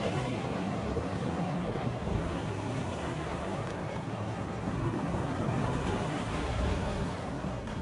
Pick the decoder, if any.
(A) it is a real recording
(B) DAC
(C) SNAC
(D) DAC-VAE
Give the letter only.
C